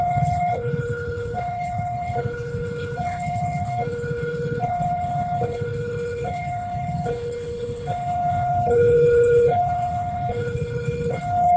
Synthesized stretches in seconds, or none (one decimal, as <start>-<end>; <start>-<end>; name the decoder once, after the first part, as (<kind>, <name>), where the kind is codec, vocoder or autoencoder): 0.0-11.6 (codec, HILCodec)